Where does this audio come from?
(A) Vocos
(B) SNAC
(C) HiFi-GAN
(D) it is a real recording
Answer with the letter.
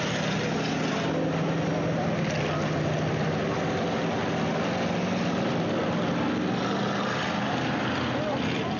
D